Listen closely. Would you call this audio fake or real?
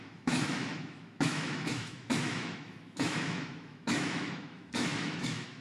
fake